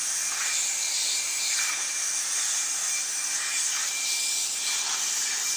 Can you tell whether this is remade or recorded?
remade